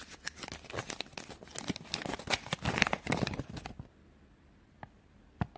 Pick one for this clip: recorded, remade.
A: recorded